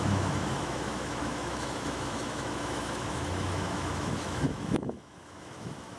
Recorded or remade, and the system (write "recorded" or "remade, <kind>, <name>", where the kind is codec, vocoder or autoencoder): remade, autoencoder, DAC-VAE